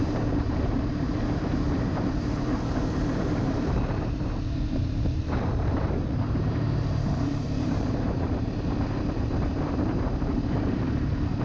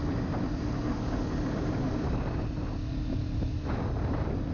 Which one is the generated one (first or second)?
first